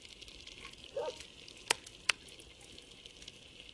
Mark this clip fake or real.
real